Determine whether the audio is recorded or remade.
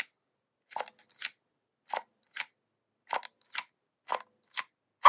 recorded